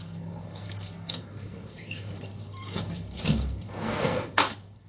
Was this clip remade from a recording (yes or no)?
yes